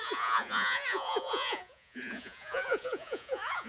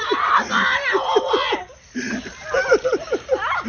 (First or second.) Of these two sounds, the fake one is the first